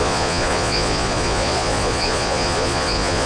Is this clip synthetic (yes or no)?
yes